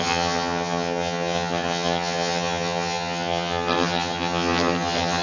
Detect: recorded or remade remade